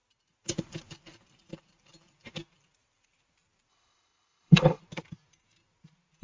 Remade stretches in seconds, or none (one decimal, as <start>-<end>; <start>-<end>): 3.7-4.8